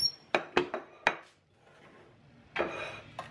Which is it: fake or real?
real